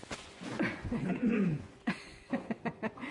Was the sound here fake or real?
fake